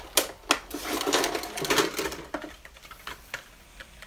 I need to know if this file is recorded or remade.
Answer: recorded